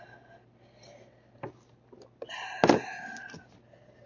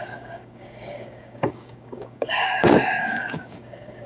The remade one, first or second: second